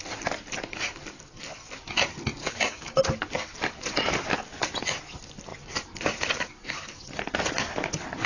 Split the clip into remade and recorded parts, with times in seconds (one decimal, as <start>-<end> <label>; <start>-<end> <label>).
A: 0.0-2.4 recorded; 2.4-3.0 remade; 3.0-8.3 recorded